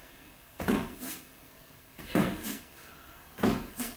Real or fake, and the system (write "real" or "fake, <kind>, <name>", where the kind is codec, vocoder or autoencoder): fake, codec, SNAC